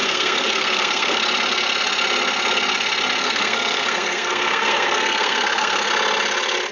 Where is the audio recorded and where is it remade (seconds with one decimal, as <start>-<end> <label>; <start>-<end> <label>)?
0.0-1.2 remade; 1.2-3.2 recorded; 3.2-5.9 remade; 5.9-6.7 recorded